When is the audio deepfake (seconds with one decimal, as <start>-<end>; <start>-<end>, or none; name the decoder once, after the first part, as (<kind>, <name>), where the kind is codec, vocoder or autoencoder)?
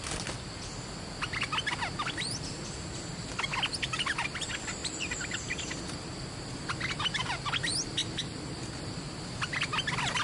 4.8-5.8 (vocoder, BigVGAN v2); 8.0-8.6